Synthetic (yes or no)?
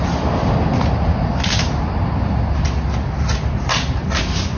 no